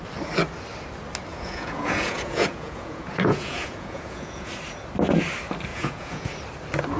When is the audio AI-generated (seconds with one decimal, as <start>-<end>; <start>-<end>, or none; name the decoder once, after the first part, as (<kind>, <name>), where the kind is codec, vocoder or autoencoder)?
1.3-4.5 (vocoder, Vocos); 5.7-6.3